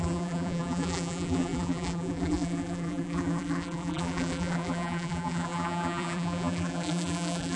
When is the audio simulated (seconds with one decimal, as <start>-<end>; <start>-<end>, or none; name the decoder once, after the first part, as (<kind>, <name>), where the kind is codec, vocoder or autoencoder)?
0.0-7.6 (vocoder, BigVGAN v2)